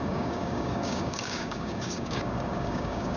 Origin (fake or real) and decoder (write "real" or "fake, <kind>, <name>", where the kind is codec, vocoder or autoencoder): fake, codec, DAC